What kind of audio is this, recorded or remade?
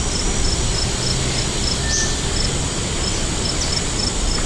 recorded